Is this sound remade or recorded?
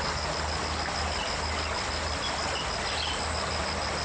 recorded